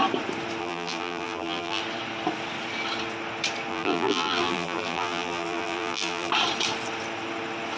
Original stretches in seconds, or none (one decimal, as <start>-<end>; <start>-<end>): 0.0-0.6; 1.8-3.7; 6.3-7.8